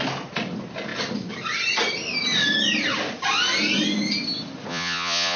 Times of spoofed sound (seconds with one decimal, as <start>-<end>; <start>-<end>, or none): 4.7-5.4